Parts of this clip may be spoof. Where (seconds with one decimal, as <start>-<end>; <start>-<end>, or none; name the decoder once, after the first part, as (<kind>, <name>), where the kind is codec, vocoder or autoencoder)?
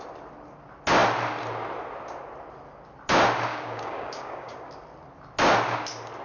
3.5-4.7 (codec, DAC)